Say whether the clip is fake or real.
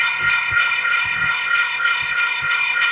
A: fake